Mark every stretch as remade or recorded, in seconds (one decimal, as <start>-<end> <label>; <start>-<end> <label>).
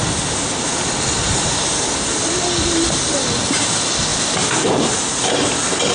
0.0-5.9 recorded